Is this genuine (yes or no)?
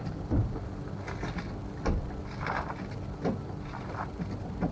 yes